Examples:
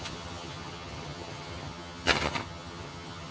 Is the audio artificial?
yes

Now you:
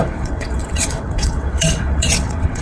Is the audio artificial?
yes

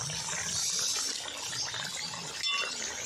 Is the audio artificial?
no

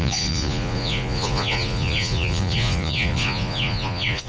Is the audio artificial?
yes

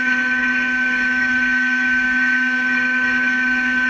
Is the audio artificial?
yes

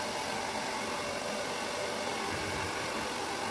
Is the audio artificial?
no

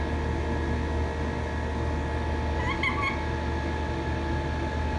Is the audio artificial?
no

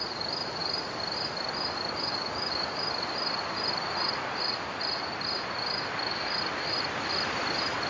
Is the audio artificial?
no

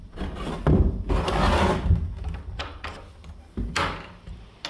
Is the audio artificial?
no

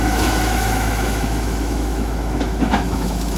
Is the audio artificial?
yes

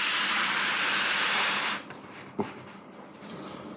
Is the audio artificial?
yes